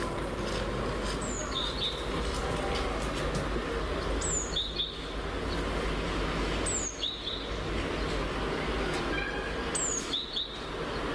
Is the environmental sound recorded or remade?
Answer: recorded